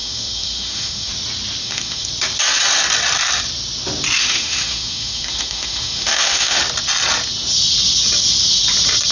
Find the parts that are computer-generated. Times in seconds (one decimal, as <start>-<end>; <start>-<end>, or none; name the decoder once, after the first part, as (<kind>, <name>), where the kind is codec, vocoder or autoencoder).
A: 0.0-1.1 (autoencoder, DAC-VAE); 1.6-2.1; 4.2-6.6